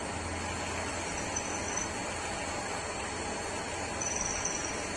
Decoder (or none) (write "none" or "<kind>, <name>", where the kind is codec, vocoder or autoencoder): none